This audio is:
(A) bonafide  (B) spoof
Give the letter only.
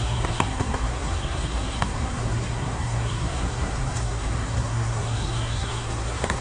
B